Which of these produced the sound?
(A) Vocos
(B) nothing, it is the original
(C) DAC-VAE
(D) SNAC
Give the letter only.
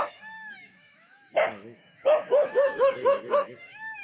C